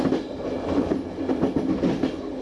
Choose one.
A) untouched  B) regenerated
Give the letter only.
A